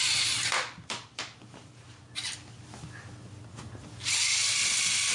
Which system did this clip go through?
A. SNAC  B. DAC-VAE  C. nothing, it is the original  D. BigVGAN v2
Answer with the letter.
C